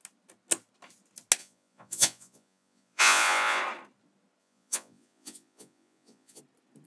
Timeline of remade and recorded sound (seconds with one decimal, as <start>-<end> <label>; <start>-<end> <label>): 0.0-1.4 recorded; 1.4-3.6 remade; 3.6-4.4 recorded; 4.4-6.4 remade; 6.4-6.9 recorded